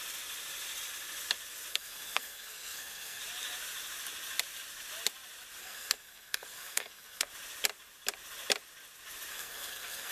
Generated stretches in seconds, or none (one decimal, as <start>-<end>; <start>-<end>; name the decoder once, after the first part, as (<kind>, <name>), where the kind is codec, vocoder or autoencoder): 1.7-3.2 (codec, SNAC); 5.6-7.3; 9.3-10.1